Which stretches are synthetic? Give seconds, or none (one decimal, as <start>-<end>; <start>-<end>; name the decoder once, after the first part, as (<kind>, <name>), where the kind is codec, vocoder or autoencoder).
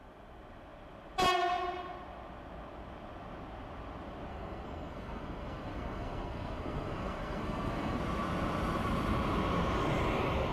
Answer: 4.3-8.0 (codec, SNAC)